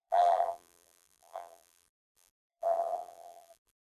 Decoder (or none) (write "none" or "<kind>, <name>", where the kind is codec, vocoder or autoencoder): vocoder, BigVGAN v2